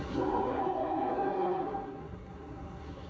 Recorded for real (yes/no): no